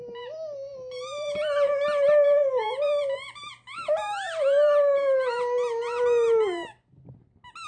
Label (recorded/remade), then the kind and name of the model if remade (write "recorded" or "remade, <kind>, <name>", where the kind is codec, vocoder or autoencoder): recorded